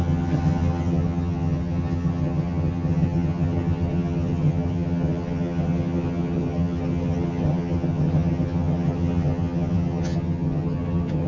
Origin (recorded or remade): remade